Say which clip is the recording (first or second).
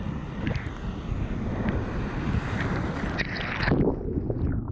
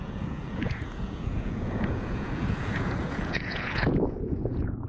first